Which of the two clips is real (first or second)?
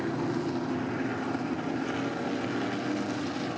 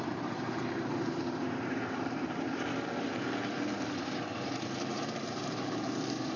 first